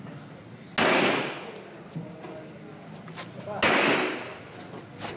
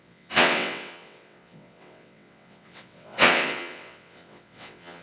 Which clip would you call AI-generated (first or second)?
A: second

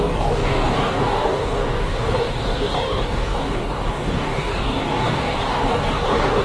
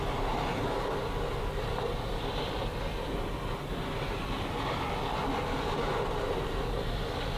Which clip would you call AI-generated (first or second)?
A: first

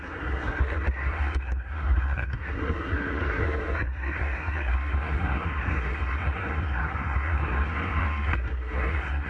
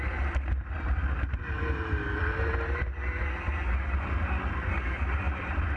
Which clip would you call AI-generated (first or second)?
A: first